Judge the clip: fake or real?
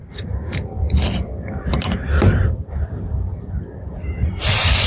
fake